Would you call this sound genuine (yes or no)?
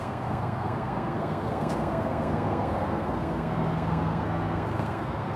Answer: no